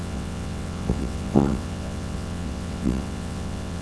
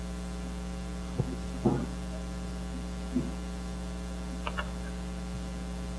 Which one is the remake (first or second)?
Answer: first